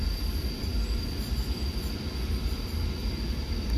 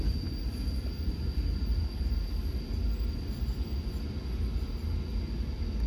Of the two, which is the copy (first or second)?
first